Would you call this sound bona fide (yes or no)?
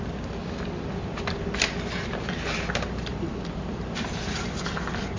no